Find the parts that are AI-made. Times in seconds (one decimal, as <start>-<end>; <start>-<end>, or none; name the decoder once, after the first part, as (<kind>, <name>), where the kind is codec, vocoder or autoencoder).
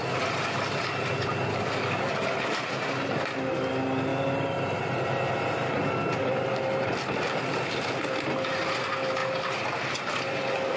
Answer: 1.5-2.6 (codec, DAC)